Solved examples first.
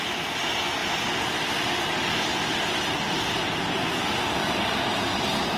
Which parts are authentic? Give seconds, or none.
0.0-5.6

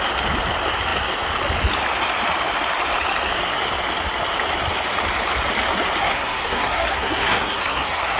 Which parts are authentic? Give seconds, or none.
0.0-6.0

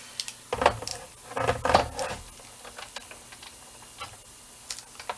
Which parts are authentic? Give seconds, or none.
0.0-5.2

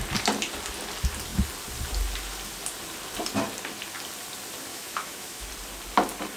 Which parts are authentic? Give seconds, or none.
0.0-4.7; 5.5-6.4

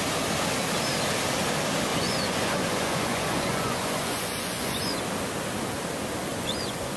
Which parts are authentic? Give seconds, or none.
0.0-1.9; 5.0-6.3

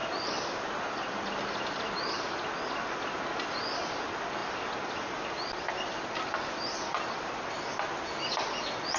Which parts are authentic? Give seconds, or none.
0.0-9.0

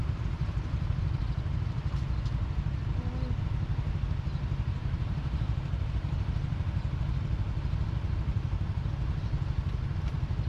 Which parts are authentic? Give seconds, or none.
1.2-4.8; 5.9-10.5

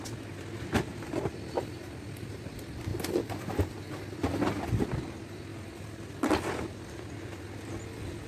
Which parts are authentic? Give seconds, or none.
0.0-0.9; 2.5-5.5; 6.3-8.3